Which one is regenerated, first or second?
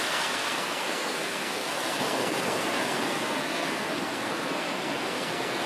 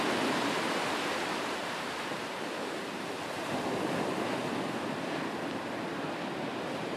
first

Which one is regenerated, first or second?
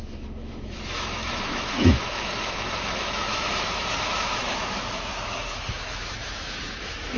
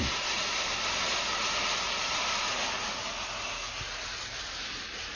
first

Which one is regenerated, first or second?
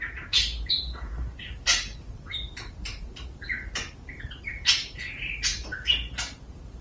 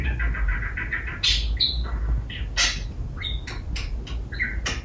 first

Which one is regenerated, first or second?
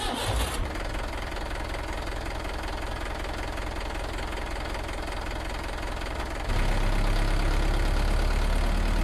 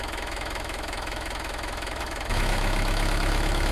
second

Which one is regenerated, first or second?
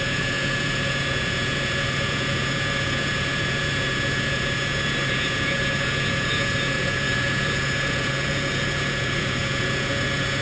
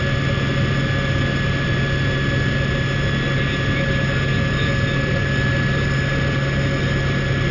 first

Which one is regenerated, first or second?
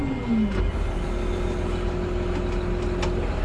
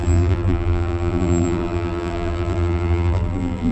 second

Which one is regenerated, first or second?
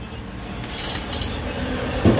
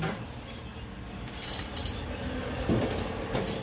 second